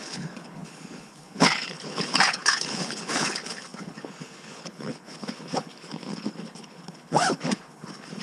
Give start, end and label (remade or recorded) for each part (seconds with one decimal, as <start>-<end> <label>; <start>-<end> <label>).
0.0-8.2 remade